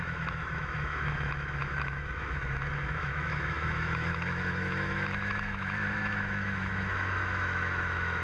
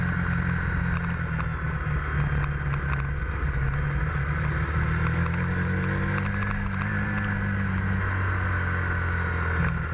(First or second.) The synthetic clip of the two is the first